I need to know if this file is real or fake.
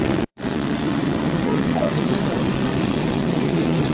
fake